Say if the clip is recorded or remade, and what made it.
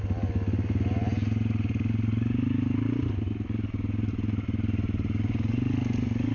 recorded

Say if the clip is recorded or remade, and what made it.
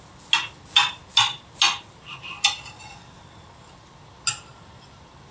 recorded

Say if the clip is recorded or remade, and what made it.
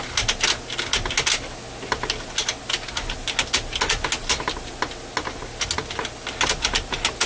recorded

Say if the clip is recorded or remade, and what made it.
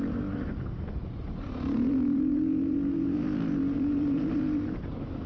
remade, vocoder, BigVGAN v2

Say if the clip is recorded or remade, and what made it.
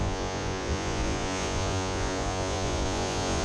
remade, vocoder, Vocos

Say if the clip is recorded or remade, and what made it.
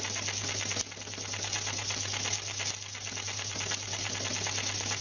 recorded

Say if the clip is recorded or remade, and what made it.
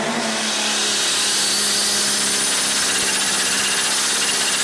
recorded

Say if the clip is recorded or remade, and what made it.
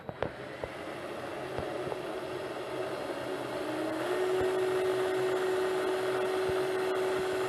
recorded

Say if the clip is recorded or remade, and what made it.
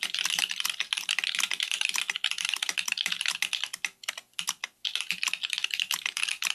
recorded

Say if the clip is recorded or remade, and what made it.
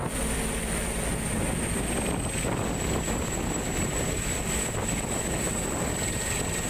recorded